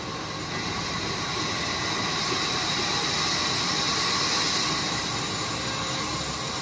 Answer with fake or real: real